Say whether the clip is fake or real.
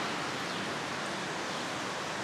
real